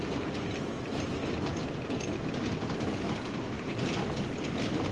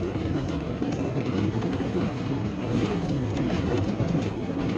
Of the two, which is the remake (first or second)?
second